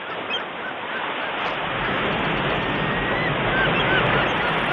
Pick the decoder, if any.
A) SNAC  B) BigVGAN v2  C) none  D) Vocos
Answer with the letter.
C